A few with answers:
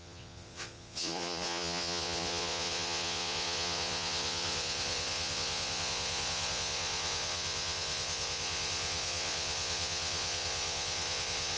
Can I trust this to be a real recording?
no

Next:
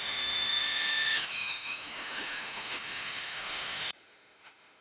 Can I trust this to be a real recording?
no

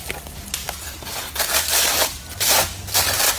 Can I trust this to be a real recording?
yes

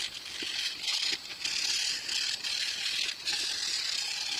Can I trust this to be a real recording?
yes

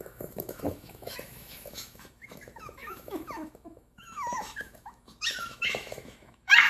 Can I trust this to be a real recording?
no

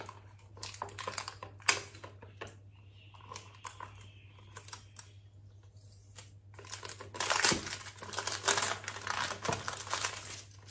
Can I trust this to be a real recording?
yes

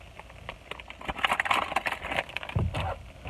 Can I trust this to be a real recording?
yes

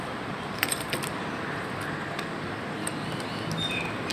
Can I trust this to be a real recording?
yes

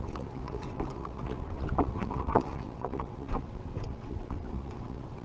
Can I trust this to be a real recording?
no